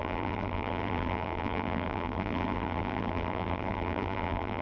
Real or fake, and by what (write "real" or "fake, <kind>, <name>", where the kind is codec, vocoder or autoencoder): fake, vocoder, BigVGAN v2